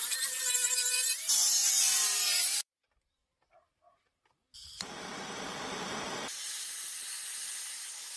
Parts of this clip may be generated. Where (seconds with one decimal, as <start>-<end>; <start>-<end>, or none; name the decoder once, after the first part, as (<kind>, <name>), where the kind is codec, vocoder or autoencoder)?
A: 1.6-2.7 (vocoder, BigVGAN v2); 3.2-7.0